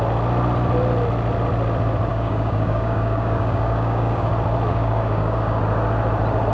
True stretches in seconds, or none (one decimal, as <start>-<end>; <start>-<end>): 0.0-2.1; 4.3-4.7; 5.6-6.5